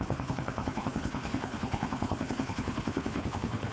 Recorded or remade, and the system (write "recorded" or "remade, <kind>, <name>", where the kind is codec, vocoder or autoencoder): remade, codec, HILCodec